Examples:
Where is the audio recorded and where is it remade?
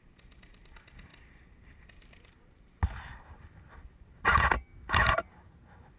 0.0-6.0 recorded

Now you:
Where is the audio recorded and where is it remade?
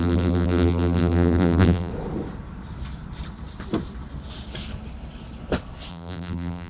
0.0-1.9 remade; 1.9-5.9 recorded; 5.9-6.7 remade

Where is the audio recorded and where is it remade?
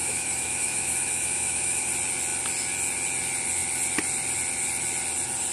0.0-1.9 remade; 1.9-5.5 recorded